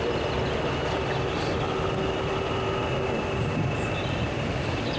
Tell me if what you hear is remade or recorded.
recorded